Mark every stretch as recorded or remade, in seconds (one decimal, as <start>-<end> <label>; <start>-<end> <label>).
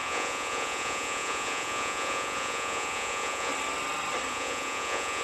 0.0-3.5 remade; 3.5-4.3 recorded; 4.3-5.2 remade